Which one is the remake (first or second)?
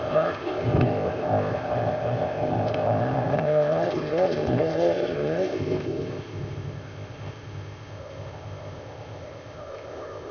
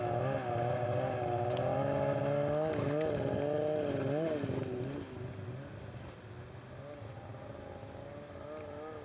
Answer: first